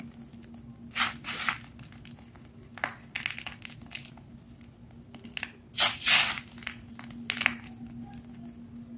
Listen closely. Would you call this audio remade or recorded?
recorded